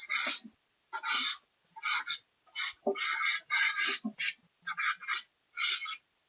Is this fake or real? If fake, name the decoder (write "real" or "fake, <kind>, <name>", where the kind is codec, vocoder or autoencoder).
real